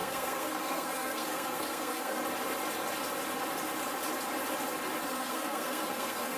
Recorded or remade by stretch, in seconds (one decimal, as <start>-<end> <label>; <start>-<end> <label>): 0.0-2.2 remade; 2.2-5.0 recorded; 5.0-6.4 remade